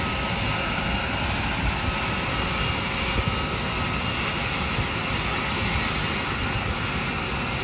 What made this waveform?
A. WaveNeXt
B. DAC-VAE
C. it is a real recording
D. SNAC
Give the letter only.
C